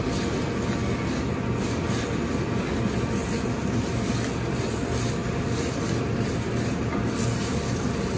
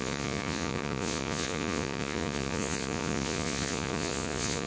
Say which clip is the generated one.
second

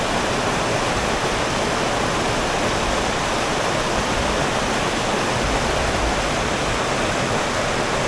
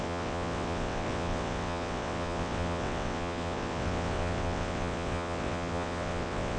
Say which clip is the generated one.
second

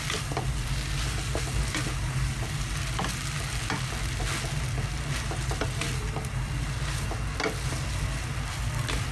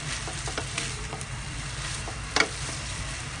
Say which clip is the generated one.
second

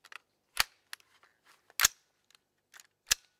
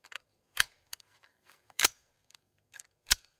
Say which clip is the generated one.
second